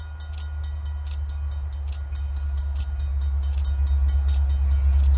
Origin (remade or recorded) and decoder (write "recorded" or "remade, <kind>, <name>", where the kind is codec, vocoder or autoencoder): recorded